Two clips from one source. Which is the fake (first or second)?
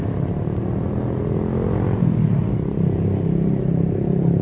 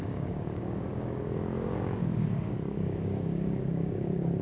second